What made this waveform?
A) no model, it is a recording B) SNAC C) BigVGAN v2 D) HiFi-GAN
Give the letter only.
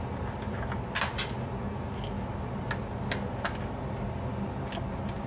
A